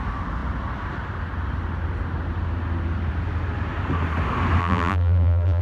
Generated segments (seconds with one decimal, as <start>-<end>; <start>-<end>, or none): 4.6-5.6